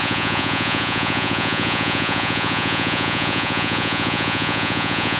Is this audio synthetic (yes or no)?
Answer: yes